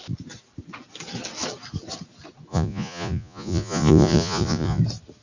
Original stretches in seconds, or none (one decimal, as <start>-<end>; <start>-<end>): 0.0-2.5; 4.8-5.2